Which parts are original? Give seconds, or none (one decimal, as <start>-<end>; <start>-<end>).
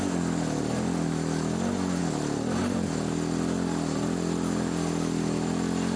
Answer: 0.0-6.0